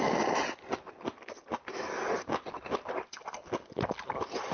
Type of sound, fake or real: real